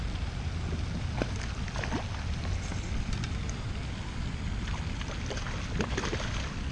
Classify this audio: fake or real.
real